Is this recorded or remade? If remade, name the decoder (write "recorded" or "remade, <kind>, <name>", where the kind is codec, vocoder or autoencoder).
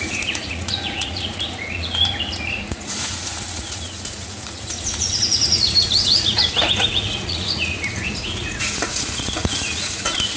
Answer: remade, vocoder, Vocos